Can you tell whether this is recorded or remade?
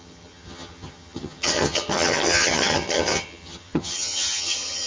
remade